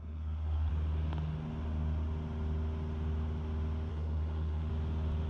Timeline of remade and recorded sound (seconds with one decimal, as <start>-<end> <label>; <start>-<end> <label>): 0.0-0.7 remade; 0.7-3.9 recorded; 3.9-4.7 remade; 4.7-5.3 recorded